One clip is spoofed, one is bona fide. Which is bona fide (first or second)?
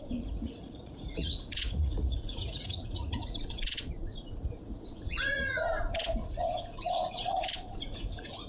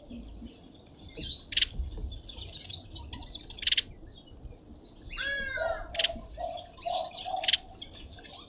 second